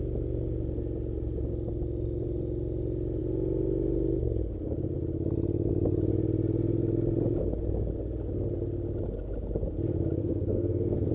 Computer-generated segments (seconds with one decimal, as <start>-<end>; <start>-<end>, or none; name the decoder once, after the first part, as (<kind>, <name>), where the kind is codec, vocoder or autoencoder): 10.2-11.1 (codec, SNAC)